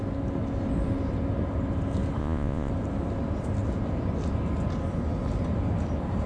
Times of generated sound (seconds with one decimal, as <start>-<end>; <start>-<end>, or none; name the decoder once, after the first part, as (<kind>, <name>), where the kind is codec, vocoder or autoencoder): 2.2-2.7 (vocoder, Vocos)